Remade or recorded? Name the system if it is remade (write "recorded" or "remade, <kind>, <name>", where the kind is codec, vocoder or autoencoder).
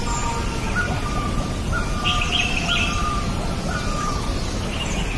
recorded